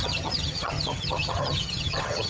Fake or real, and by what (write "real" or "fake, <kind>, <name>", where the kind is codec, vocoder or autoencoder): fake, vocoder, HiFi-GAN